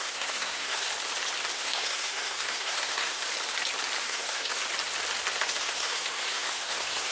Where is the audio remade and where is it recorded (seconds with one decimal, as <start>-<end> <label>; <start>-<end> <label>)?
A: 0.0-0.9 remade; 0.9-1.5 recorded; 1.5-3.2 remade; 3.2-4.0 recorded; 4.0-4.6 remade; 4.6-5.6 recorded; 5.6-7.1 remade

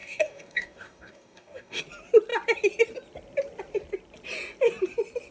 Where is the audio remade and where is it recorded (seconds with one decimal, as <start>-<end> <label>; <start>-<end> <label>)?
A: 0.0-1.8 remade; 1.8-5.3 recorded

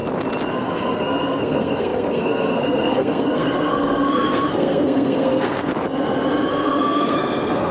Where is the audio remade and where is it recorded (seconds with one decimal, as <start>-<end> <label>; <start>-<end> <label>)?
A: 0.0-0.5 recorded; 0.5-5.7 remade; 5.7-6.5 recorded; 6.5-7.7 remade

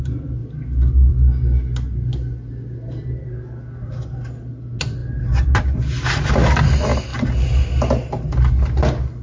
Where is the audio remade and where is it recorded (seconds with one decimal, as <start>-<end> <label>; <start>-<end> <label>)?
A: 0.0-9.2 recorded